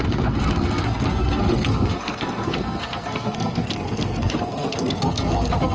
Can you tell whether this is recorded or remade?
remade